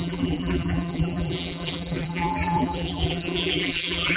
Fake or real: fake